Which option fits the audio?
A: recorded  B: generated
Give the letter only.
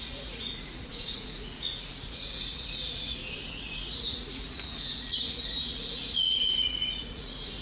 B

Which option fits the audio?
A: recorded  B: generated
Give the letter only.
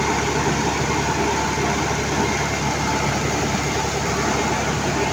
A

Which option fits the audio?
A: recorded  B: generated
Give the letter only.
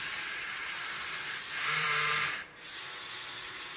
B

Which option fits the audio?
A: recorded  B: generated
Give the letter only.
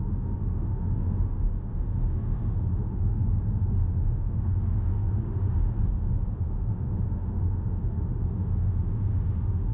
B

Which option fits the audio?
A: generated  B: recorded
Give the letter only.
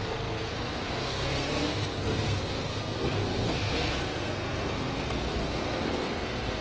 A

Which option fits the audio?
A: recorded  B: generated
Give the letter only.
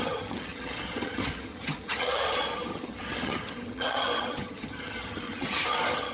B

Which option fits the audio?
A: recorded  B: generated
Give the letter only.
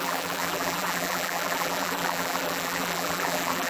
B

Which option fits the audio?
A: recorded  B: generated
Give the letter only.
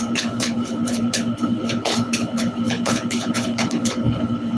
B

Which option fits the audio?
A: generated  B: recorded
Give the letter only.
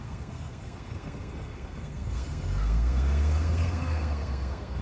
A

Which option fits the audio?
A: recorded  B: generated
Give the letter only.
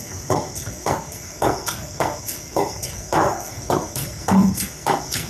B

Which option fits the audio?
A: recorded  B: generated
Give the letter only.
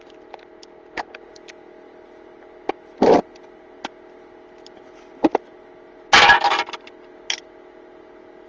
A